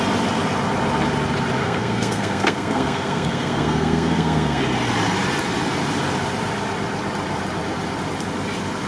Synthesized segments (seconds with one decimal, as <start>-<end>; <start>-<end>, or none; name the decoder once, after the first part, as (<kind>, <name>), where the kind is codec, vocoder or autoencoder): 1.6-4.6 (codec, SNAC)